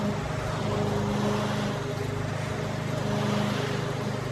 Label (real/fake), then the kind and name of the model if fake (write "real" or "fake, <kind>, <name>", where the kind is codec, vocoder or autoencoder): real